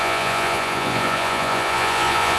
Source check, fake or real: fake